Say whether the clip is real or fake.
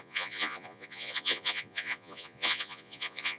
fake